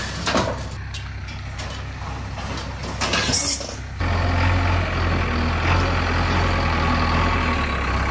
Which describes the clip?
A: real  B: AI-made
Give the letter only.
A